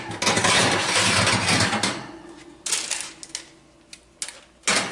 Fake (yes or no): no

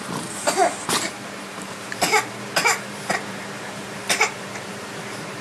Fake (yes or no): yes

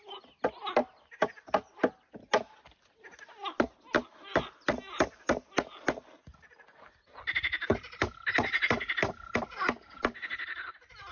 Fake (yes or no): no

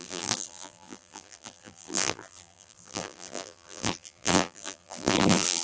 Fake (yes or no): yes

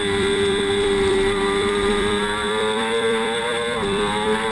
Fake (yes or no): yes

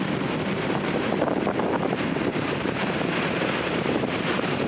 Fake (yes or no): yes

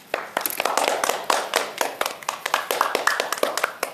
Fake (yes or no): no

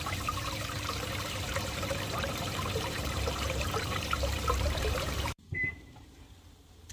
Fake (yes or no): yes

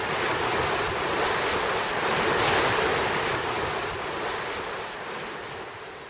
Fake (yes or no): no